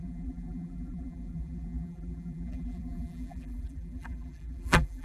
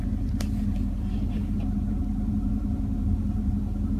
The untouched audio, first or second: second